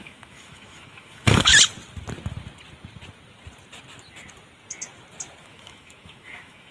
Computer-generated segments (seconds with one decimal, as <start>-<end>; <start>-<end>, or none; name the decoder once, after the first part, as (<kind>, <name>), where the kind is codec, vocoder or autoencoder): 0.0-1.5 (autoencoder, DAC-VAE); 5.4-6.7